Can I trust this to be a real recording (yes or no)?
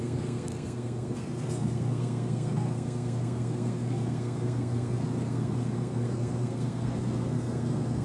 no